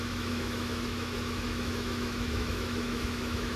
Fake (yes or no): yes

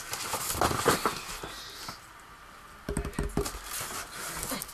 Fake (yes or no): no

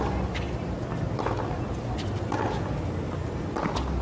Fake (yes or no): no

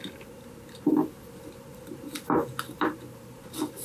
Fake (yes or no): no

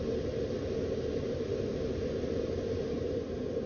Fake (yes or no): no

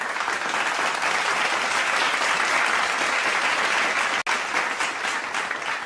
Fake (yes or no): no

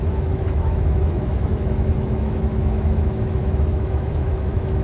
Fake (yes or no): yes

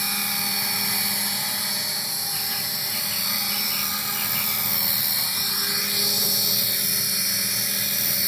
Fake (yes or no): no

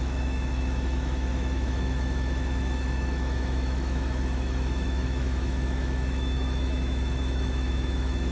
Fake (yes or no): yes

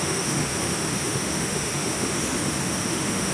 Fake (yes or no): yes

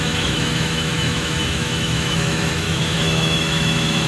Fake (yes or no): yes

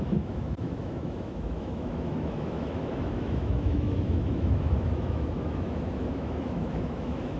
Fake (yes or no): yes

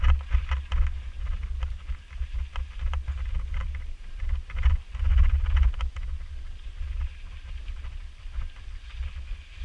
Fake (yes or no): no